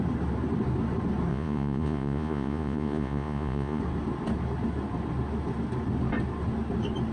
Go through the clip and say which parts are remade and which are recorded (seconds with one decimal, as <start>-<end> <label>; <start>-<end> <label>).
0.0-1.3 recorded; 1.3-3.8 remade; 3.8-7.1 recorded